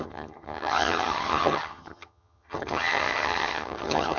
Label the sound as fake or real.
fake